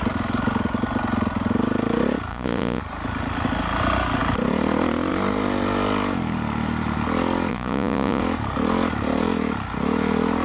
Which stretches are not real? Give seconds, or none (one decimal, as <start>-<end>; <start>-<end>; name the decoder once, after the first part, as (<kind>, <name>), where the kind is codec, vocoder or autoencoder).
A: 2.3-2.8 (vocoder, Vocos); 7.5-8.2